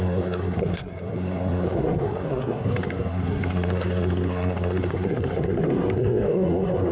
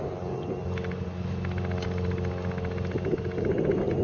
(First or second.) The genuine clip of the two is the second